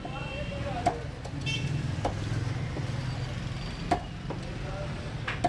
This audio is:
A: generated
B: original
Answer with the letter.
B